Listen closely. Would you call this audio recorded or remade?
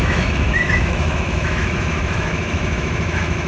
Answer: remade